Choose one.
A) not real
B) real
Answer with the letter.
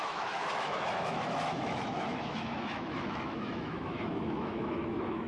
A